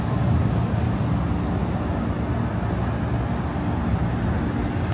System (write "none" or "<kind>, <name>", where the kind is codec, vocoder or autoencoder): none